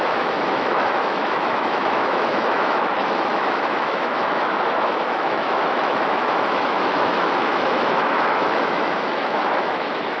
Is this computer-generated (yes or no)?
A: yes